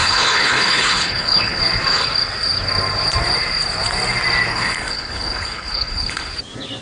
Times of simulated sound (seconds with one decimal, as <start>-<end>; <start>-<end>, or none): 0.0-1.6; 4.5-6.3